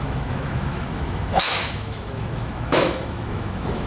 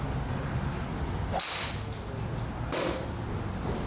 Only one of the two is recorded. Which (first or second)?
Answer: second